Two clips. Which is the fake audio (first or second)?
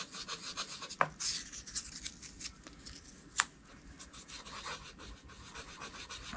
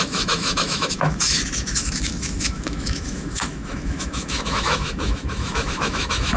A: second